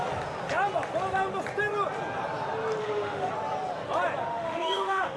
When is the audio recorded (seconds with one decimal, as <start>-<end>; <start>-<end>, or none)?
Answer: 0.0-2.8; 3.3-4.3